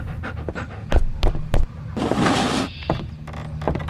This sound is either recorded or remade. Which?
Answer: recorded